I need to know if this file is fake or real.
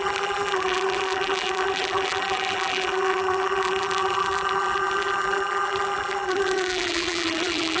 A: fake